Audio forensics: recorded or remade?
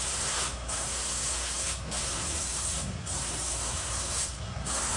remade